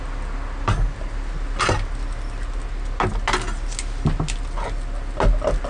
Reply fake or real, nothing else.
real